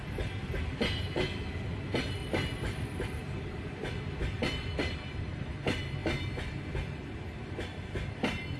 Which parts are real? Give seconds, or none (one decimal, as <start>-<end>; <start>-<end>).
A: 0.0-1.7; 2.2-3.3; 6.0-8.1